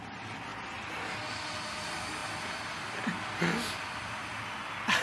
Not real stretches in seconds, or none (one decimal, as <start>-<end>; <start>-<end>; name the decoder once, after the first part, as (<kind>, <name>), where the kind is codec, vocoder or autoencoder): none